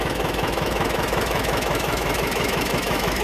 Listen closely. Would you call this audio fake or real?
fake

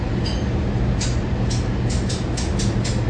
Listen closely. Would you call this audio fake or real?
real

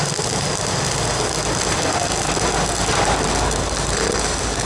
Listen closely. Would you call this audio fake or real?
real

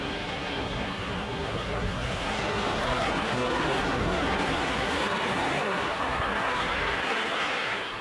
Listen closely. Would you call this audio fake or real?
fake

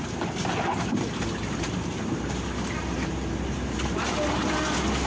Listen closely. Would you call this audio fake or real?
real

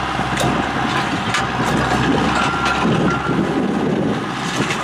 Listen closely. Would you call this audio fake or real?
real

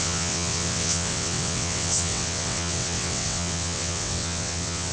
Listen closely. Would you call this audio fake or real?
fake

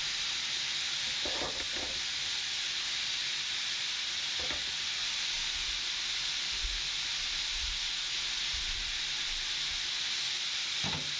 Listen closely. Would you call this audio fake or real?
real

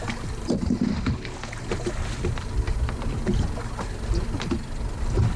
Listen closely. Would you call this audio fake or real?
real